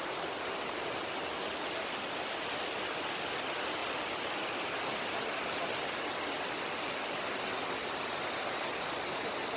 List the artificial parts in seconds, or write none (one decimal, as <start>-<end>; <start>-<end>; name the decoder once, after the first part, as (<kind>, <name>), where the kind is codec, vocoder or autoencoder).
none